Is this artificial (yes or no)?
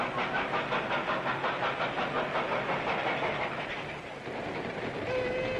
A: no